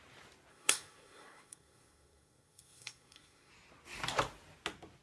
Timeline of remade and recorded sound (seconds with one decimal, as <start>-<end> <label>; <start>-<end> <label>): 0.0-0.5 recorded; 0.5-3.5 remade; 3.5-5.0 recorded